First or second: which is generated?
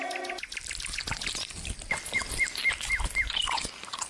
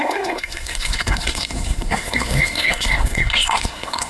second